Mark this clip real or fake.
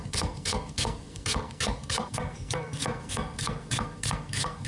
fake